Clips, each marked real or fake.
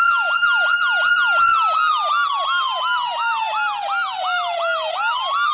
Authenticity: real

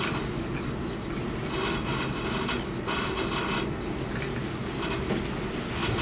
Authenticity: real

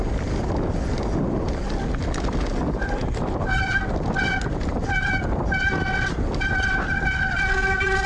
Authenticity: real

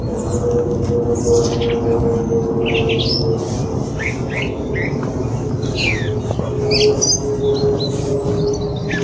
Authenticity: real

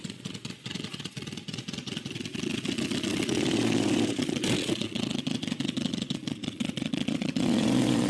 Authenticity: fake